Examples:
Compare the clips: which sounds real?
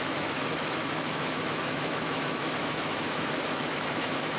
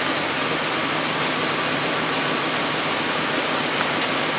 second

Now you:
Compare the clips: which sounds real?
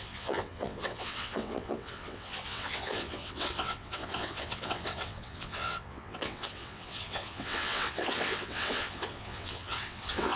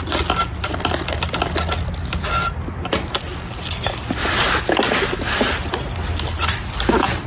second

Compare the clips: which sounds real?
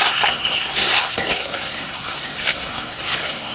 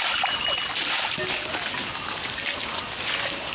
second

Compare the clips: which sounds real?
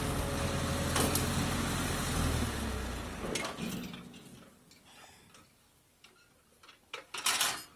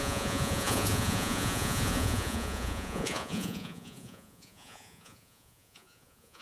first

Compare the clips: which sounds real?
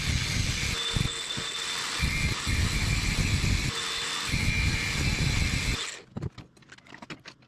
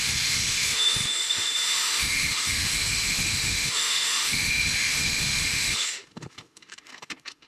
first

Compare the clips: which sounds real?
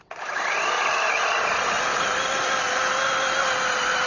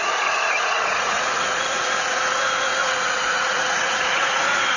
first